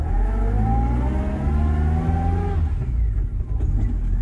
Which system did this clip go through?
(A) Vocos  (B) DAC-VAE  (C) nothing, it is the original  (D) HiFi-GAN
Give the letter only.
C